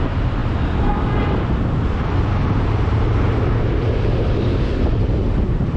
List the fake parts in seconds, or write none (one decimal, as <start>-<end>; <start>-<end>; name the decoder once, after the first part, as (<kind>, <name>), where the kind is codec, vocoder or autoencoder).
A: none